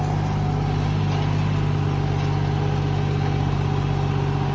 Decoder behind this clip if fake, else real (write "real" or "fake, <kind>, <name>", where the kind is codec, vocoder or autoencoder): real